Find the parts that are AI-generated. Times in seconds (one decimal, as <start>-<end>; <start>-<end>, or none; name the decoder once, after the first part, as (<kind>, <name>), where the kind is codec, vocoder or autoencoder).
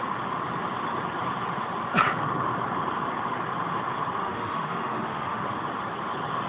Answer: 4.2-5.4 (autoencoder, DAC-VAE)